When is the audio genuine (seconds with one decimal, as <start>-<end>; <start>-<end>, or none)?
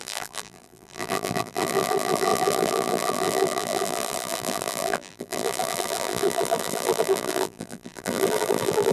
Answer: none